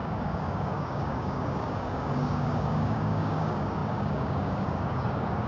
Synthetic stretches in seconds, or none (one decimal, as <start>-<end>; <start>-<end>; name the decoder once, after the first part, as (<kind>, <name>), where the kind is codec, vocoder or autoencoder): 0.0-5.5 (codec, DAC)